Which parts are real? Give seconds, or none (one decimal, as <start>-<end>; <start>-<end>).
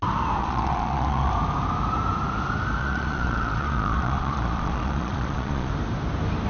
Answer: 0.0-0.4; 1.3-2.8; 5.7-6.5